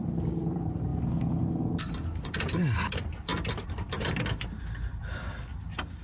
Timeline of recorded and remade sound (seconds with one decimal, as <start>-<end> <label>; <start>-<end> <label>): 0.0-0.9 remade; 0.9-1.8 recorded; 1.8-6.0 remade